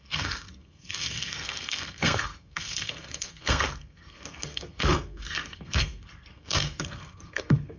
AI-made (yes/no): yes